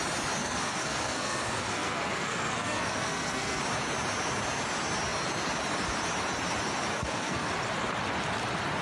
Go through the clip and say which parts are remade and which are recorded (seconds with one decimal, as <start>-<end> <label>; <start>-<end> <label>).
0.0-0.4 recorded; 0.4-3.6 remade; 3.6-6.9 recorded; 6.9-7.5 remade; 7.5-8.8 recorded